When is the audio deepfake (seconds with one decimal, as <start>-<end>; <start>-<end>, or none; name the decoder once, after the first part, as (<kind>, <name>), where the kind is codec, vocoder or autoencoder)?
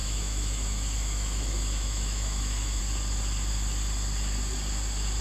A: 0.0-2.8 (autoencoder, DAC-VAE)